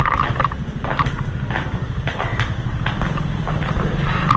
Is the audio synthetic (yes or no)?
no